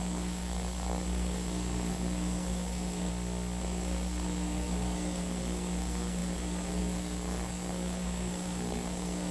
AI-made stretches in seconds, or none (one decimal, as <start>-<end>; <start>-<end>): 0.0-3.1; 3.6-9.3